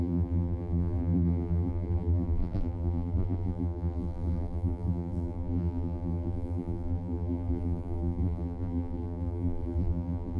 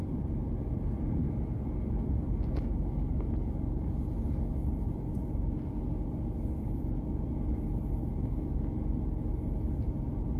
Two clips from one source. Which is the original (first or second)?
second